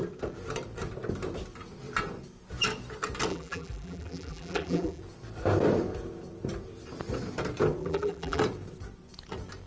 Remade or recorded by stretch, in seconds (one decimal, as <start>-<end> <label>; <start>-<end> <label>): 0.0-3.3 recorded; 3.3-5.0 remade; 5.0-7.8 recorded; 7.8-8.4 remade; 8.4-9.7 recorded